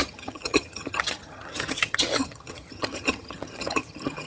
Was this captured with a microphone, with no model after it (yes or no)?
no